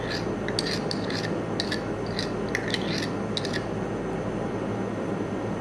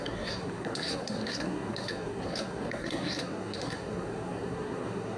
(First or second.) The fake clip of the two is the second